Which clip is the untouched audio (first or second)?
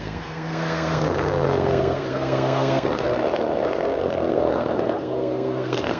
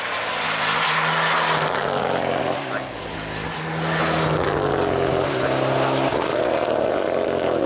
second